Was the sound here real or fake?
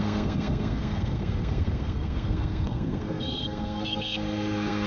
fake